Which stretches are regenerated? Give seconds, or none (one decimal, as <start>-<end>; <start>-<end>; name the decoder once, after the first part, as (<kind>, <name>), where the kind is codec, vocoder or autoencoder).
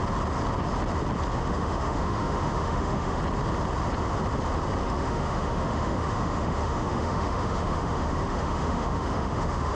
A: 1.4-3.2 (autoencoder, DAC-VAE); 4.8-9.7